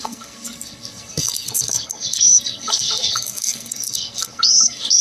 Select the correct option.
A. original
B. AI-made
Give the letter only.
B